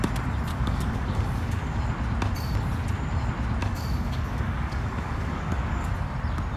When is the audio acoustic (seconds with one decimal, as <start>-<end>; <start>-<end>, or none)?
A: 0.0-0.5; 1.8-3.6; 5.9-6.6